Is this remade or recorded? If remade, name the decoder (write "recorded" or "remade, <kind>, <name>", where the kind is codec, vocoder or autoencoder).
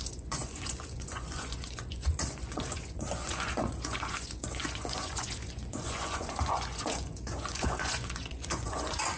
remade, vocoder, Vocos